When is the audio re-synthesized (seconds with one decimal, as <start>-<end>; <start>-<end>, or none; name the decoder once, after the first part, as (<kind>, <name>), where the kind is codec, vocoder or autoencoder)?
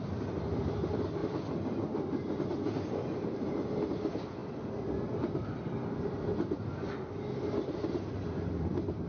none